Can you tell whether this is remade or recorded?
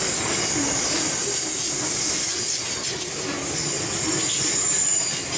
recorded